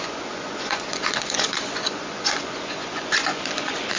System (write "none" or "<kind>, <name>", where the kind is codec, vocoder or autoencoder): vocoder, Vocos